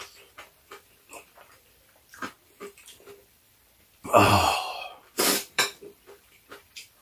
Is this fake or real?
fake